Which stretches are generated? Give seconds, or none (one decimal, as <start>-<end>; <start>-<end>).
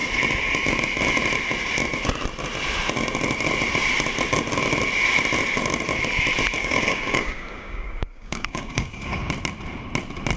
6.6-9.3